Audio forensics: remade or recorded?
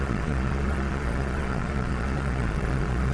remade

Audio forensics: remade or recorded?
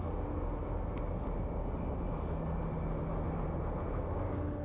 recorded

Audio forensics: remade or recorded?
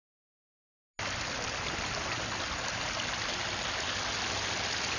recorded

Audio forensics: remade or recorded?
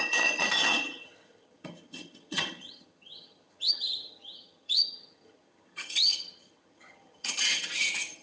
remade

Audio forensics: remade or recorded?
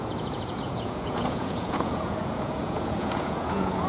remade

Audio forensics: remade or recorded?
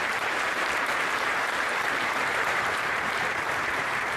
remade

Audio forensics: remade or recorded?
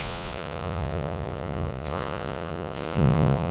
remade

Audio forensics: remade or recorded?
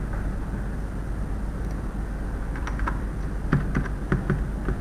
recorded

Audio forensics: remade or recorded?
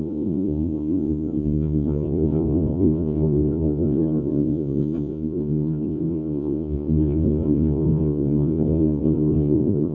remade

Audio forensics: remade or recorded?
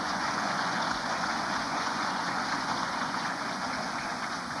remade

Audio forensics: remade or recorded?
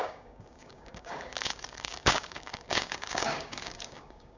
remade